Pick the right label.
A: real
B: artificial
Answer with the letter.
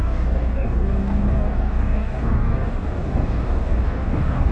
B